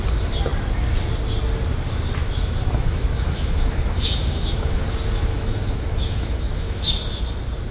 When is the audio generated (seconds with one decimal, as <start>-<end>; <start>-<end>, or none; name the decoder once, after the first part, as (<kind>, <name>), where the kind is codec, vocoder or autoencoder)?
2.2-4.8 (autoencoder, DAC-VAE); 5.3-7.2